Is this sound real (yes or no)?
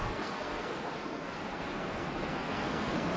no